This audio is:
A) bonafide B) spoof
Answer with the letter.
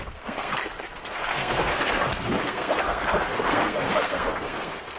B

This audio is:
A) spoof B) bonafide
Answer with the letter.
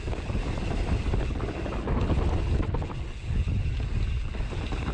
B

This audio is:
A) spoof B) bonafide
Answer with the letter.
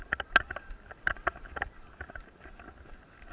B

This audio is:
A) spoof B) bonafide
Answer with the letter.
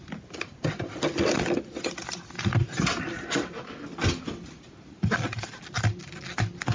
B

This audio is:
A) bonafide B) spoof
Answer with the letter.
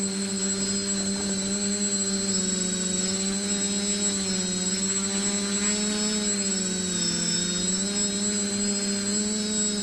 A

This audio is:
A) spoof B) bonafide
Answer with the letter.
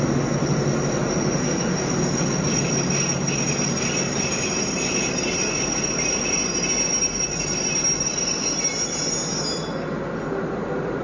B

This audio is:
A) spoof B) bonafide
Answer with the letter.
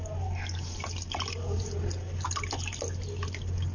B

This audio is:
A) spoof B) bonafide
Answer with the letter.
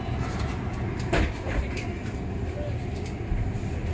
A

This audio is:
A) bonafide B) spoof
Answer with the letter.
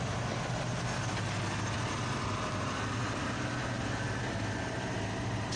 A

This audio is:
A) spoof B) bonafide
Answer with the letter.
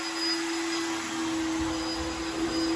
B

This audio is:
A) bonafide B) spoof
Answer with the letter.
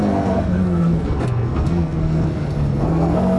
B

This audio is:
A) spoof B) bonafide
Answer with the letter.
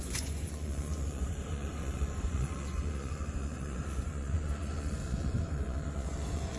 A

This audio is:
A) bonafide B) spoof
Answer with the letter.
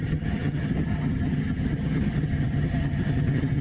B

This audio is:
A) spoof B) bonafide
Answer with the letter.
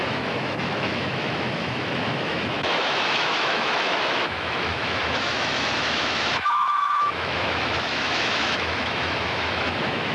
A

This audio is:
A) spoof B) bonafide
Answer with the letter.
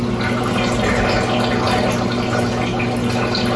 B